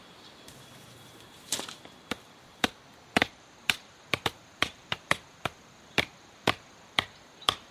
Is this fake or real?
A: fake